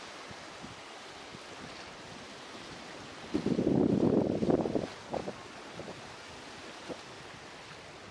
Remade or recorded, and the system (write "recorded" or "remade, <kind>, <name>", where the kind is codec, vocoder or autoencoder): recorded